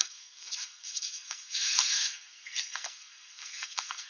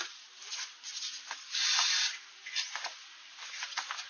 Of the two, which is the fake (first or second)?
first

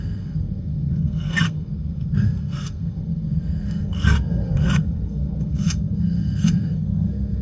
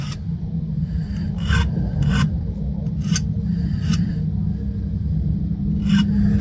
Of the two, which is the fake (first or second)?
first